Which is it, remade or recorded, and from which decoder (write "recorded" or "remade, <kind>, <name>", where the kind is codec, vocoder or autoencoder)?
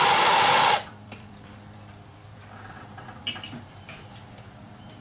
remade, vocoder, BigVGAN v2